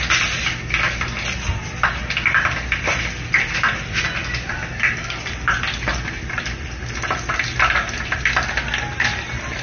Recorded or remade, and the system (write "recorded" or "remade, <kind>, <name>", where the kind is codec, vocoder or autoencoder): recorded